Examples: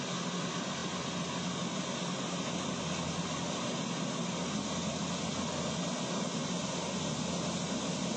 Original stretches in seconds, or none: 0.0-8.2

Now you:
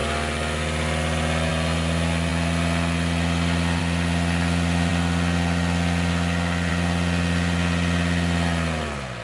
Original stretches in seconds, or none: 0.0-9.2